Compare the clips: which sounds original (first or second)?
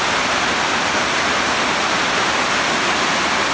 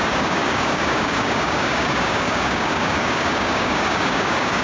first